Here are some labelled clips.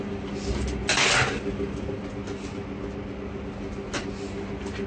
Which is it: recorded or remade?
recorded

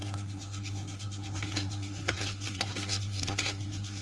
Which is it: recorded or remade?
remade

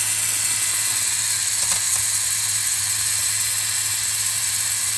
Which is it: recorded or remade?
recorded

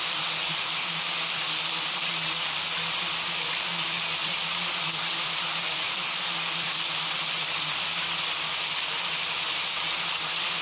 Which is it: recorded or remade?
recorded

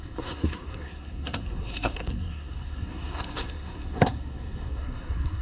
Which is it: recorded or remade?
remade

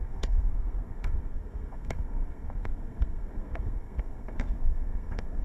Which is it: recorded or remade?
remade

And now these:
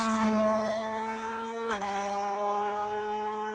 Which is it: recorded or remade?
remade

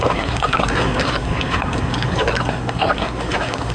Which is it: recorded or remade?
remade